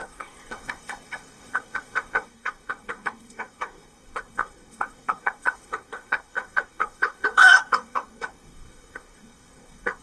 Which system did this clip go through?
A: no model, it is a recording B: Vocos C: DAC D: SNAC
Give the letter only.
D